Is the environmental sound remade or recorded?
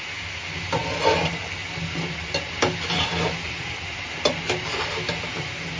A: recorded